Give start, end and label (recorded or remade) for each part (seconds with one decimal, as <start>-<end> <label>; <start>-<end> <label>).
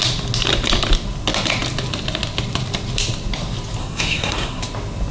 0.0-3.8 recorded; 3.8-4.6 remade; 4.6-5.1 recorded